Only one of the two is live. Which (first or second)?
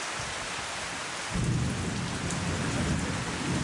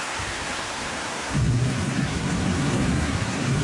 first